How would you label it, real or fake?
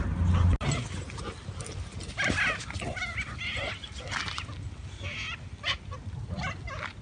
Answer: real